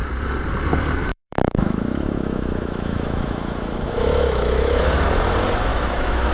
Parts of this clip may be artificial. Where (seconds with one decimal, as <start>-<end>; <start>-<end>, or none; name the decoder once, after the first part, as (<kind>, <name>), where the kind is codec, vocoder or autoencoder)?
1.1-4.8 (autoencoder, DAC-VAE); 5.7-6.3